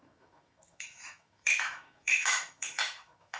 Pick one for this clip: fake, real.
fake